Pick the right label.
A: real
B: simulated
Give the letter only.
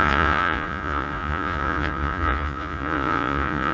B